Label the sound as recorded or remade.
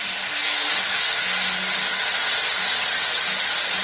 recorded